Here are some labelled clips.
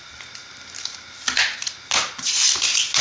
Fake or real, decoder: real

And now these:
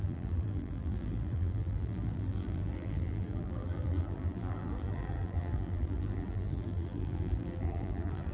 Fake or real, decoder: fake, vocoder, BigVGAN v2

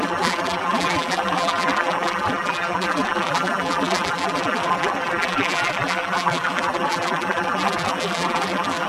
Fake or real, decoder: fake, vocoder, BigVGAN v2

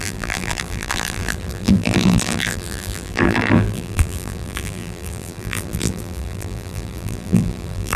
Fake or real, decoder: fake, vocoder, BigVGAN v2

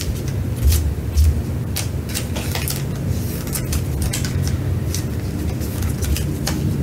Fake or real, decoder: real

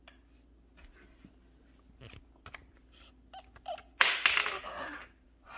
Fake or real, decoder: real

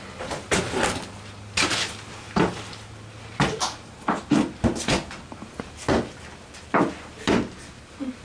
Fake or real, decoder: real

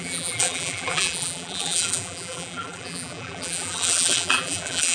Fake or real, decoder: fake, vocoder, BigVGAN v2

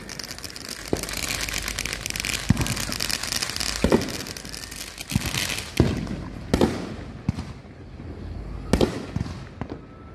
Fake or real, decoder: real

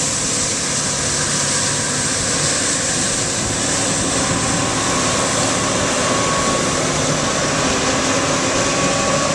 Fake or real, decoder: real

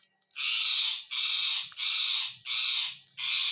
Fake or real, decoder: real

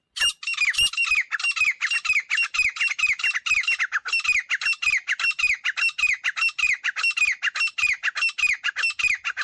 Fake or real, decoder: real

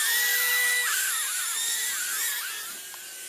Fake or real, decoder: real